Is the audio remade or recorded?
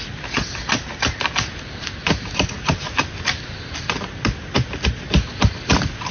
recorded